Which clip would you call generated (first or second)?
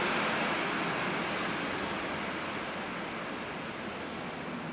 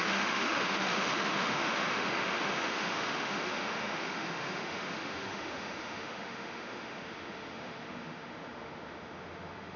second